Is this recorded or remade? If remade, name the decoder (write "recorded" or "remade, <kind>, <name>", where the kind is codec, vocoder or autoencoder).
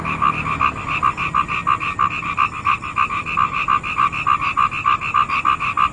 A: recorded